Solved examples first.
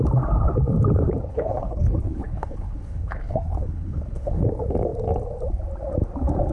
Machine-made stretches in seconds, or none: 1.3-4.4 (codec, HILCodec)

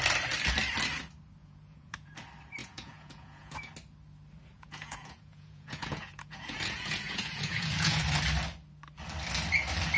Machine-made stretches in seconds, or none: 1.4-2.1 (vocoder, Vocos); 2.6-3.7; 4.5-8.0

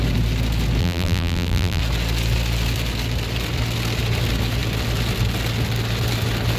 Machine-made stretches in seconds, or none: 0.8-1.8 (vocoder, BigVGAN v2)

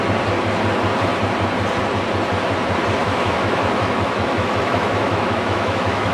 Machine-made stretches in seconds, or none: 3.0-6.1 (autoencoder, DAC-VAE)

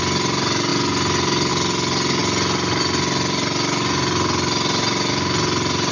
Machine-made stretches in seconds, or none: none